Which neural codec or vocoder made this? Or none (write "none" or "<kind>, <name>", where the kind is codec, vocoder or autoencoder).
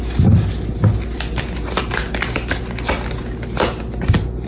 none